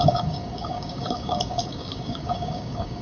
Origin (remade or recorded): remade